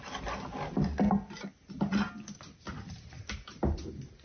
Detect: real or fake real